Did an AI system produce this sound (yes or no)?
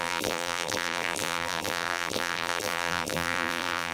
yes